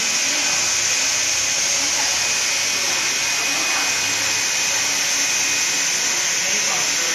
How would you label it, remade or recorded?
recorded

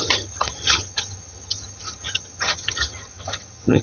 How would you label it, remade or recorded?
remade